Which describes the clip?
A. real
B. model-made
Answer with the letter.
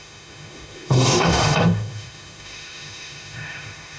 B